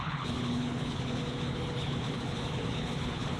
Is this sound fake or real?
fake